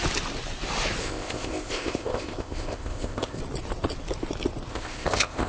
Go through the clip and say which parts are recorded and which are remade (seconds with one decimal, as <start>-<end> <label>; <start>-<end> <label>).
0.0-1.0 recorded; 1.0-3.4 remade; 3.4-4.7 recorded; 4.7-5.5 remade